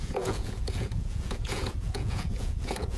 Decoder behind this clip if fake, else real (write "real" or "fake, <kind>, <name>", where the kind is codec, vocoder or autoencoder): fake, vocoder, Vocos